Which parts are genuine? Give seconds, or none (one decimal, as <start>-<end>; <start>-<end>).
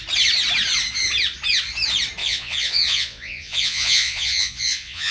0.0-2.2